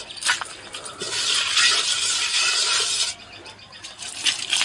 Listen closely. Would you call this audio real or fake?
real